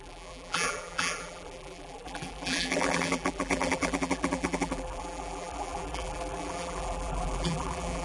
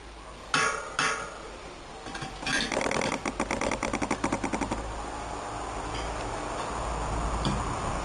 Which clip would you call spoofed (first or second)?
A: first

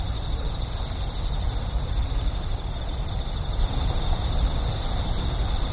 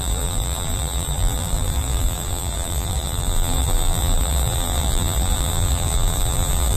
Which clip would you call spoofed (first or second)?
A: second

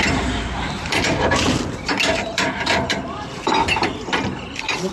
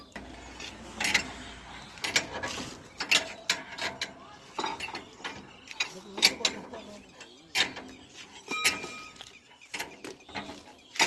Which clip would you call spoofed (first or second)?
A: first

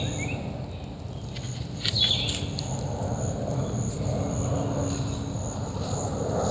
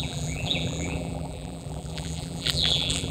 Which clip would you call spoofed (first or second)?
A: second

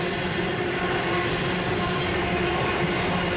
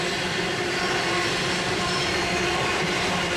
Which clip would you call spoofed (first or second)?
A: second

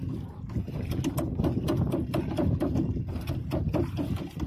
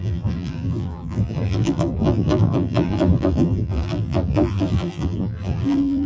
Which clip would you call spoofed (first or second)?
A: second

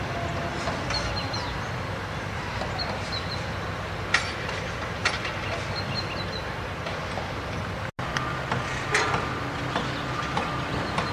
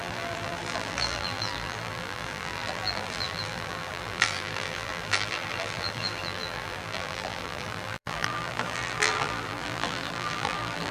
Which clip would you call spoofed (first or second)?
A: second